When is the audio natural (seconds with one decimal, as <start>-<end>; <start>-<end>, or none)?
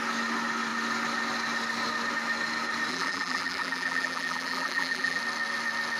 0.0-2.9; 5.2-6.0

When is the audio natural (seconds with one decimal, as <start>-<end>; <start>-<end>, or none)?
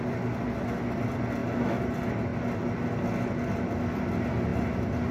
0.0-1.4; 1.9-5.1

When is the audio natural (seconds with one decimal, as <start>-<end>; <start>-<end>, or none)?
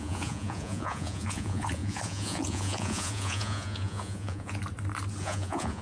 4.6-5.2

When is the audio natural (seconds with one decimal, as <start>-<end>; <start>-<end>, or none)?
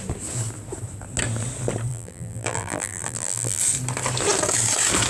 0.0-1.9; 3.6-5.1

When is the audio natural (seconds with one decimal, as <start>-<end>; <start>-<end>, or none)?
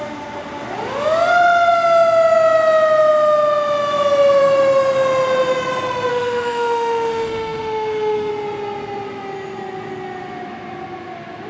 0.0-6.1; 8.3-11.5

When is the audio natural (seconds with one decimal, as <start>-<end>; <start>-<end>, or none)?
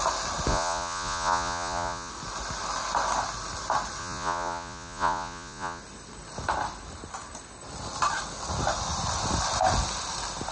0.0-0.5; 2.1-4.0; 5.8-10.5